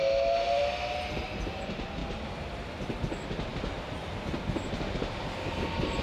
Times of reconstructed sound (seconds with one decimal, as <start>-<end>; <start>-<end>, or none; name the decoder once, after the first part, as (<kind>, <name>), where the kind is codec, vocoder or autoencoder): 2.0-3.0 (vocoder, BigVGAN v2)